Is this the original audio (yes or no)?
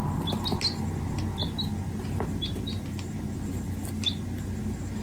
yes